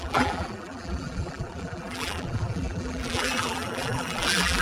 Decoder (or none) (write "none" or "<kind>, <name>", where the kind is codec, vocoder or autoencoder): vocoder, BigVGAN v2